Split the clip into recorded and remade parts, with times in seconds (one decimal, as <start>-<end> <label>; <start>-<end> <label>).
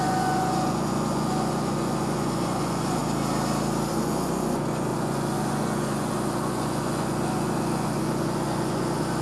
0.0-3.0 remade; 3.0-3.9 recorded; 3.9-9.2 remade